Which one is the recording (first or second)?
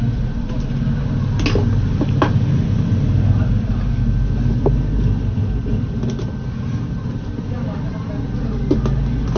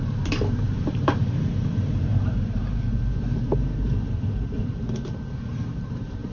first